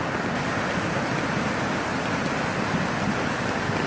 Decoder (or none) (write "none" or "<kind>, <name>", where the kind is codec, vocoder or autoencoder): none